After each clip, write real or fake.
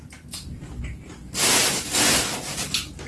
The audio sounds real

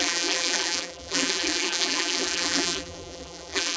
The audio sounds fake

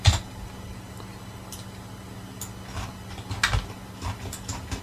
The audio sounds real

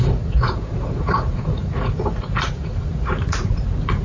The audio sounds fake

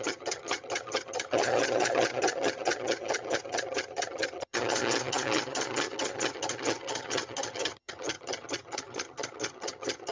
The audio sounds fake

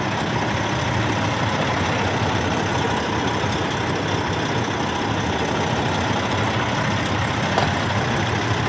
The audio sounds real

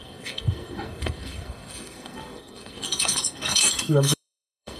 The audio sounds fake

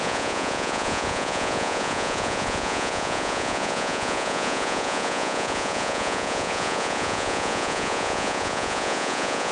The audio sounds fake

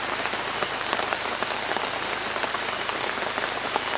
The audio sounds real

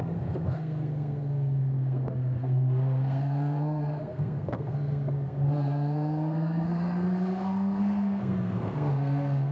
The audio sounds fake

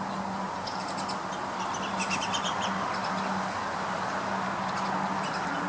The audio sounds real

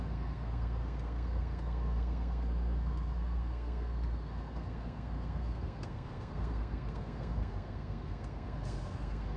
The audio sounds fake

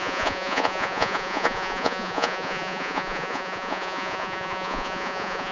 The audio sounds fake